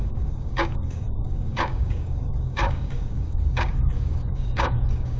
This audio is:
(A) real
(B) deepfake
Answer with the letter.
B